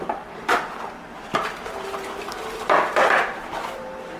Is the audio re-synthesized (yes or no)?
yes